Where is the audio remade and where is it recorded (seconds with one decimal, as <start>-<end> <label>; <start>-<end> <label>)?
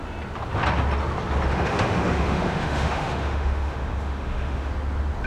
0.0-1.5 recorded; 1.5-4.7 remade; 4.7-5.3 recorded